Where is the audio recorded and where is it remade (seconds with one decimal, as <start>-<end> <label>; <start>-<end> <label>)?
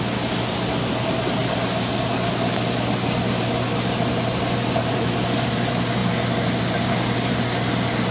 0.0-8.1 recorded